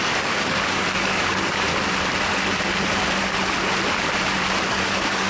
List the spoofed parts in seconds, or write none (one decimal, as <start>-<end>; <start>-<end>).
0.0-1.7; 4.7-5.3

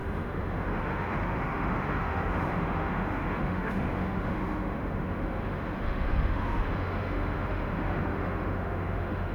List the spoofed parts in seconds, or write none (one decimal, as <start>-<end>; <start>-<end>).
0.0-9.3

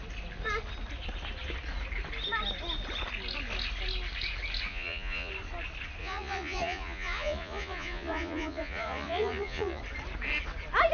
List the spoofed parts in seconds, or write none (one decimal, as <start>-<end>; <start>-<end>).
4.7-5.3; 6.0-9.8

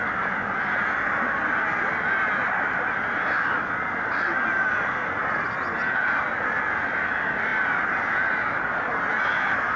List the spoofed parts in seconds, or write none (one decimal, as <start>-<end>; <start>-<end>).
none

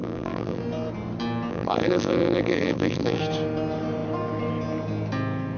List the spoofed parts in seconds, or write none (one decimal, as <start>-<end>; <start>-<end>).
0.0-0.6; 1.5-3.2

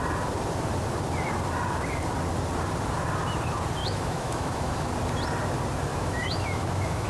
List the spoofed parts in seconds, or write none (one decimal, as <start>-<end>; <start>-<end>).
3.8-4.9; 5.9-7.1